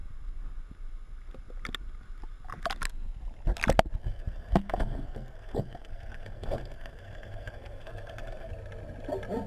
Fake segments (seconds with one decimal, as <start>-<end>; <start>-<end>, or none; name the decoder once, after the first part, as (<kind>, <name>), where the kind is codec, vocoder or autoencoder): 4.0-8.5 (codec, SNAC)